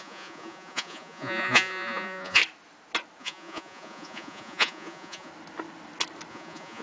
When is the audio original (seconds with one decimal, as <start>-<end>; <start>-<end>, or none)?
2.4-3.2; 5.3-6.3